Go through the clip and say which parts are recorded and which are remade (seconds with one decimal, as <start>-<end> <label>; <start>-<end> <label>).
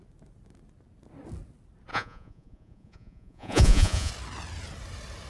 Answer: 0.0-1.9 recorded; 1.9-4.1 remade; 4.1-5.3 recorded